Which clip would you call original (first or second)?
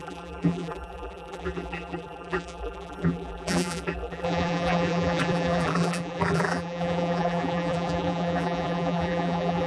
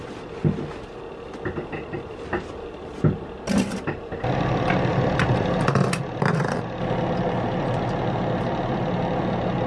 second